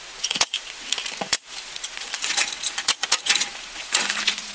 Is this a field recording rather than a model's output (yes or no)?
no